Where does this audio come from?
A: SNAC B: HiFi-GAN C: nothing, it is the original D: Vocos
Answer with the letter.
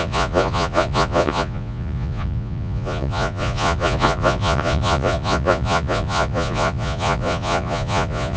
D